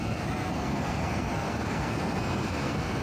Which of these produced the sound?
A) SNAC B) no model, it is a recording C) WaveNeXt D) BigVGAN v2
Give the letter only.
A